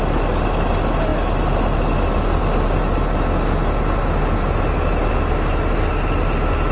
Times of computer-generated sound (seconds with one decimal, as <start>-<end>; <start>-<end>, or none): none